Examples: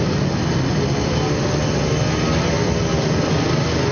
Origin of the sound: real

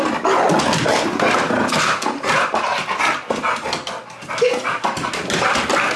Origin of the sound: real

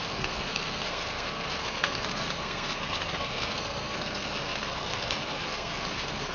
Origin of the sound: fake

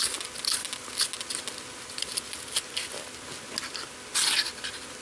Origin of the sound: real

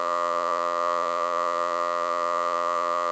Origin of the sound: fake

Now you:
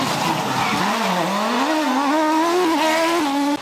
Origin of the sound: real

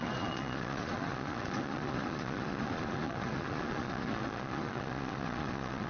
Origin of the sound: fake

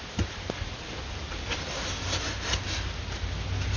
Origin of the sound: real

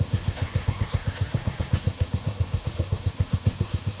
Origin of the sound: fake